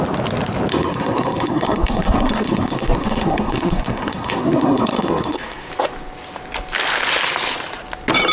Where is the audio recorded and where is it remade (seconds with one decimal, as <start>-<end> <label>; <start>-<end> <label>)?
0.0-0.7 recorded; 0.7-5.7 remade; 5.7-8.3 recorded